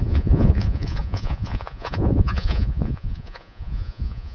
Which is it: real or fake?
fake